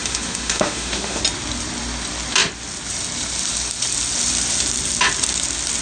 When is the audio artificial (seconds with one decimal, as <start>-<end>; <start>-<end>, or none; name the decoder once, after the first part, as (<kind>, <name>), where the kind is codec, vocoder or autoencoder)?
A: 0.0-1.2 (autoencoder, DAC-VAE)